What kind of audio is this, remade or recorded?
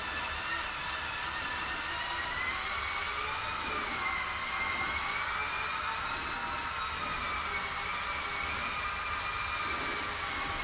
recorded